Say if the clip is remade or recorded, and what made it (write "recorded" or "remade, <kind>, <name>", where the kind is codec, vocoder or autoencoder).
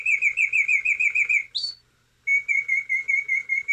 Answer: recorded